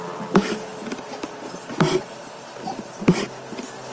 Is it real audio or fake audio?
real